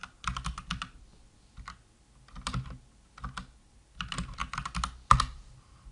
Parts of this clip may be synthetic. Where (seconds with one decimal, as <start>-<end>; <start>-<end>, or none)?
none